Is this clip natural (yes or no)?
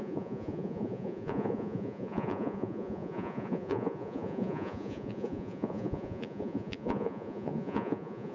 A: no